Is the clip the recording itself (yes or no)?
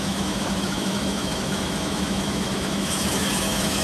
no